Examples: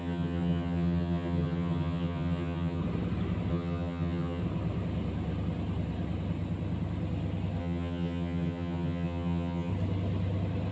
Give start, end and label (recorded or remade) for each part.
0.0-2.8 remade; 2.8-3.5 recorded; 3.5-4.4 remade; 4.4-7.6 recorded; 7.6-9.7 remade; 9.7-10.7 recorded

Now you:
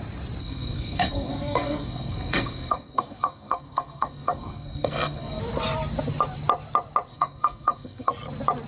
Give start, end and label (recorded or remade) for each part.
0.0-0.4 recorded; 0.4-5.4 remade; 5.4-7.1 recorded; 7.1-8.1 remade; 8.1-8.7 recorded

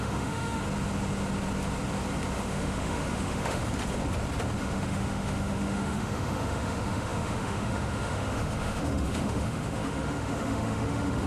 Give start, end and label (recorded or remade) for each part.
0.0-0.6 remade; 0.6-2.4 recorded; 2.4-3.6 remade; 3.6-4.6 recorded; 4.6-11.3 remade